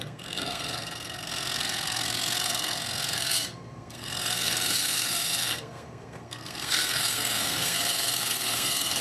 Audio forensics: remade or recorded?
remade